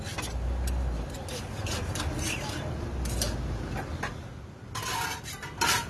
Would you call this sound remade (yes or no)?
no